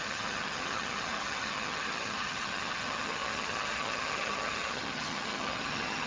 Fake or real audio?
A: fake